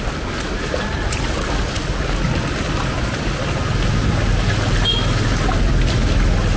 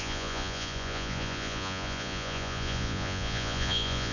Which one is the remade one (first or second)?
second